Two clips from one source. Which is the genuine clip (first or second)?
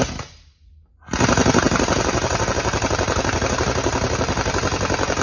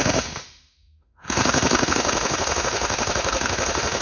first